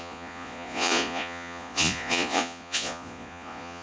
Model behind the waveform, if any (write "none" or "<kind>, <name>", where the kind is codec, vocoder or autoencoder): vocoder, Vocos